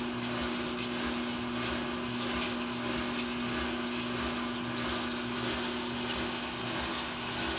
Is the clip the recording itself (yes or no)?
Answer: yes